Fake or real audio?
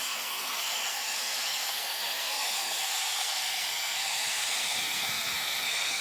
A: fake